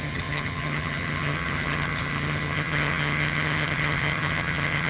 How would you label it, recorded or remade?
remade